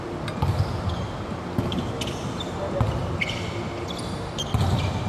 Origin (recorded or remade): recorded